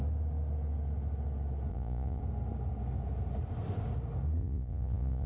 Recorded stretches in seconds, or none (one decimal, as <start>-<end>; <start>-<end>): 0.0-1.7; 2.2-4.4